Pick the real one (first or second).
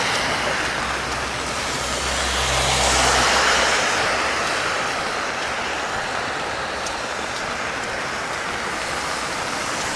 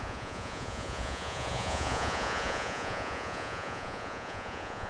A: first